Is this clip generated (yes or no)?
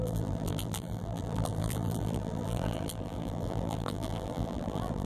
yes